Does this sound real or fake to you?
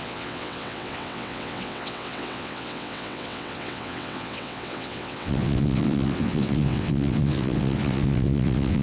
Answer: fake